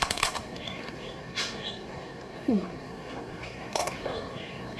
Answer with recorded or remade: remade